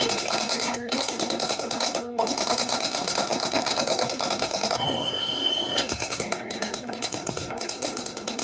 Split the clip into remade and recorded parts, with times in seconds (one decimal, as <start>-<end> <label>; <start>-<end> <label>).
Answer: 0.0-8.4 remade